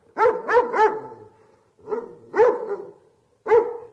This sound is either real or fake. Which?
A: real